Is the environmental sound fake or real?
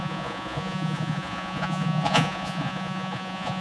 fake